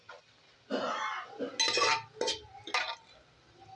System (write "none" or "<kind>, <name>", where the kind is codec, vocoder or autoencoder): none